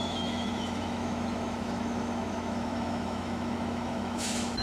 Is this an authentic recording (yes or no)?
no